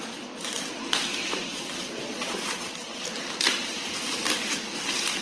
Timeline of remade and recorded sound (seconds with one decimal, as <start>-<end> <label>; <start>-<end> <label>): 0.0-1.5 recorded; 1.5-2.7 remade; 2.7-5.2 recorded